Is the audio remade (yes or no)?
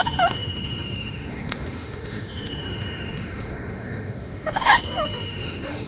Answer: yes